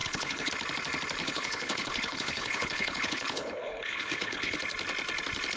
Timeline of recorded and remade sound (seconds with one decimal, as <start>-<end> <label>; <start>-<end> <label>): 0.0-0.5 remade; 0.5-1.2 recorded; 1.2-4.6 remade; 4.6-5.6 recorded